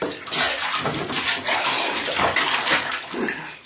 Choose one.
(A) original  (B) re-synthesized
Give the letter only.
A